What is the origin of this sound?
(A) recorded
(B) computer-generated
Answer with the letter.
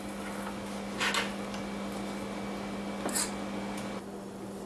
A